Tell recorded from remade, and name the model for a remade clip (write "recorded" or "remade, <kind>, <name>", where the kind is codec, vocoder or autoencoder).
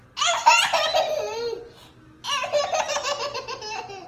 recorded